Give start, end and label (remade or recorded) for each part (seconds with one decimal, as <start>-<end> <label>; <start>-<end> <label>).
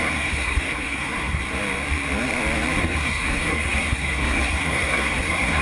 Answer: 0.0-1.4 remade; 1.4-2.8 recorded; 2.8-5.6 remade